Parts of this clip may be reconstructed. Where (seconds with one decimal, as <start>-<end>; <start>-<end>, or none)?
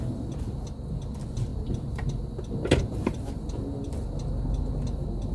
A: none